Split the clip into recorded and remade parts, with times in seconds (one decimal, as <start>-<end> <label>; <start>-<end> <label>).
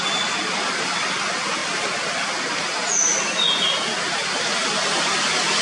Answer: 0.0-5.6 recorded